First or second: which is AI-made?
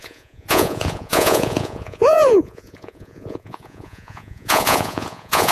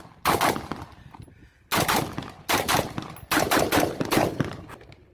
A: first